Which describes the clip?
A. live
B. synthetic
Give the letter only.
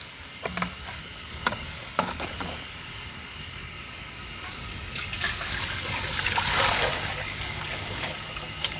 B